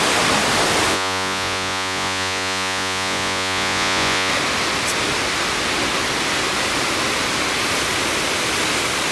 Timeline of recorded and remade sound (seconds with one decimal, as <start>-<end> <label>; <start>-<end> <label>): 0.0-0.9 recorded; 0.9-4.3 remade; 4.3-9.1 recorded